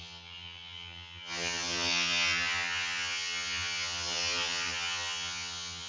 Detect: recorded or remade remade